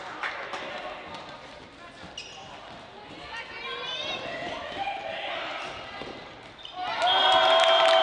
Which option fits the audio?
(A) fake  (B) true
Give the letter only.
B